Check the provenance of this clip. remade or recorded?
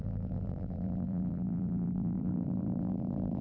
remade